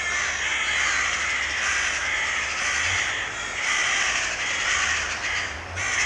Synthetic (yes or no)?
no